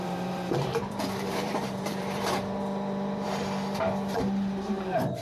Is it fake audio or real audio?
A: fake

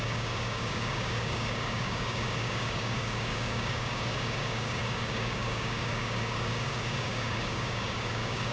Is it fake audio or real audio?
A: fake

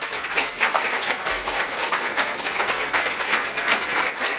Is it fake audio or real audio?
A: fake